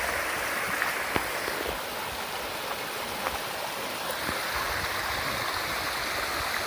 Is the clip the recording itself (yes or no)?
yes